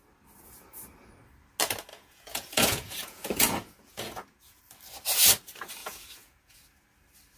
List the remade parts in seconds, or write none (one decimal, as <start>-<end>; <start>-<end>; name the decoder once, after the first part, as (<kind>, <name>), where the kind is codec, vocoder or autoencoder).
1.9-4.6 (vocoder, Vocos); 5.8-6.6